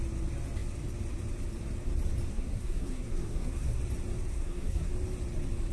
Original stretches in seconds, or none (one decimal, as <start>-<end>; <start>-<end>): 0.0-2.3; 3.8-4.3; 4.9-5.7